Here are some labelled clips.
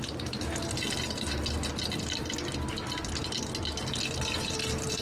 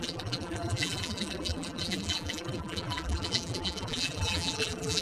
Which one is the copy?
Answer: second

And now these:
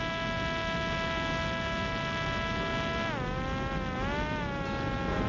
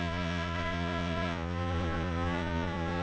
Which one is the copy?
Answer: second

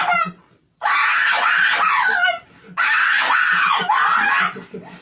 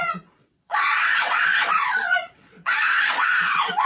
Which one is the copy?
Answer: second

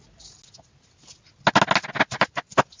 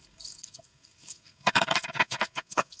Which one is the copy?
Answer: second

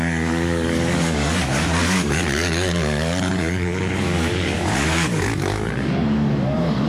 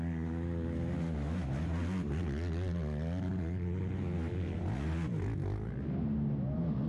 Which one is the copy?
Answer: first